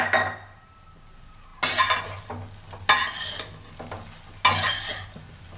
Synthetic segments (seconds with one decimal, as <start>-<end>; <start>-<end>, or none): none

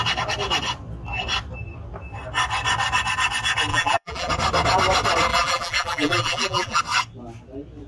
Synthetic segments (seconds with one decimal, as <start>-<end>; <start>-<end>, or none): 3.7-4.3; 5.3-6.8

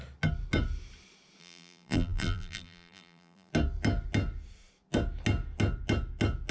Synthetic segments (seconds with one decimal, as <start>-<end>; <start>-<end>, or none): 1.4-3.5

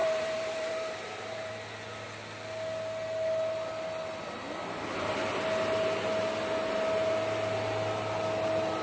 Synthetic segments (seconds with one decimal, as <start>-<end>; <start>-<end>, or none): 0.0-1.5

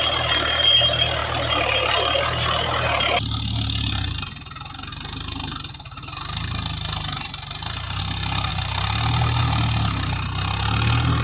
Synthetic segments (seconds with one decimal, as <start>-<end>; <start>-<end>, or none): none

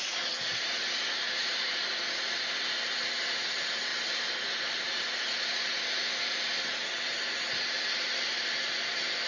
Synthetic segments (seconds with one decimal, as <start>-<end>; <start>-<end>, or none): none